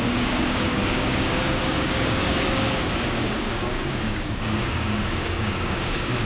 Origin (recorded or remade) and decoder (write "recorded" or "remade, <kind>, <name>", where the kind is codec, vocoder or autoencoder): remade, codec, DAC